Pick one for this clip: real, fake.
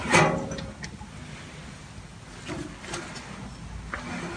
real